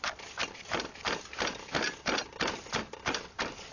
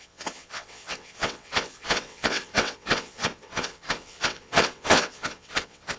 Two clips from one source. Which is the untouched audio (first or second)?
first